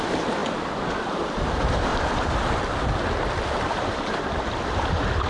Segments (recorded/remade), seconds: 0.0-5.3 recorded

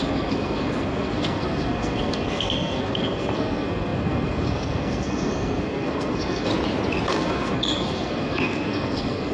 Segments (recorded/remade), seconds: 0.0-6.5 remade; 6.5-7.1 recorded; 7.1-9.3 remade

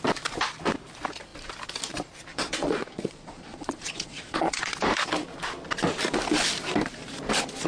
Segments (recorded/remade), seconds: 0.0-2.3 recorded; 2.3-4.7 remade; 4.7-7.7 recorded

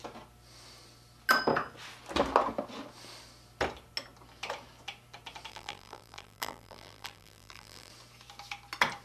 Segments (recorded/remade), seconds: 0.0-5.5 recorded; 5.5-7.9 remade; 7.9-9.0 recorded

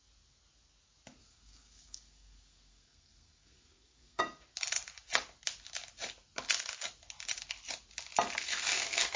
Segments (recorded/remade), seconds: 0.0-1.2 recorded; 1.2-4.2 remade; 4.2-8.4 recorded; 8.4-9.2 remade

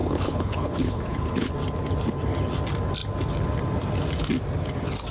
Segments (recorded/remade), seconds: 0.0-1.5 remade; 1.5-5.1 recorded